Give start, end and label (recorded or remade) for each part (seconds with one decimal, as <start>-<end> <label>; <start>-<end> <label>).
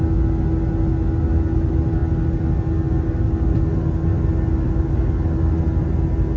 0.0-6.4 recorded